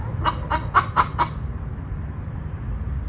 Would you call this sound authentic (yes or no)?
no